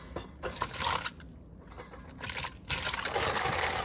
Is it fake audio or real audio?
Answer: real